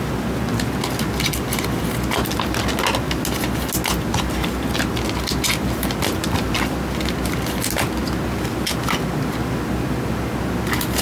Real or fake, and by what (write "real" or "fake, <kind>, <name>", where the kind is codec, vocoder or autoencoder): real